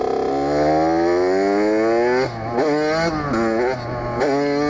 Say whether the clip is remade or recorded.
recorded